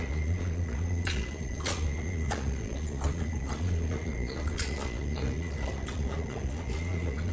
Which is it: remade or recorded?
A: remade